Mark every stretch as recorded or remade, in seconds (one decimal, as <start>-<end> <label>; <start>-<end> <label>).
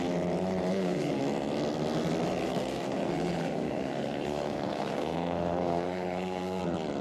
0.0-0.7 recorded; 0.7-1.2 remade; 1.2-2.4 recorded; 2.4-6.6 remade; 6.6-7.0 recorded